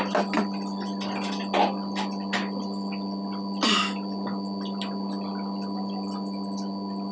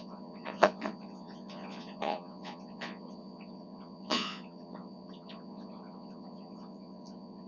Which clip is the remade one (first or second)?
second